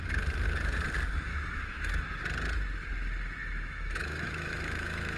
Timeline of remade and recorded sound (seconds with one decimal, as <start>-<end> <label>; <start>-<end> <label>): 0.0-1.3 recorded; 1.3-2.2 remade; 2.2-3.4 recorded; 3.4-5.2 remade